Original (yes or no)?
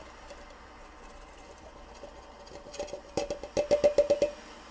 yes